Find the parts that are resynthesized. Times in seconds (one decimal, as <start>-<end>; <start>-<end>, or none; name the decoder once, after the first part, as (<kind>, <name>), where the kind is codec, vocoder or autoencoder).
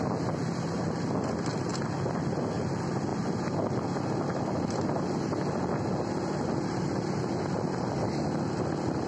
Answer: none